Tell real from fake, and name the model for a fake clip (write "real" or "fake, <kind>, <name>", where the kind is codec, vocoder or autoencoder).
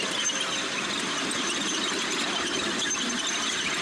real